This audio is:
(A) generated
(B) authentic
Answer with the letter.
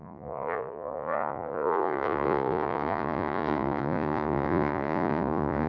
A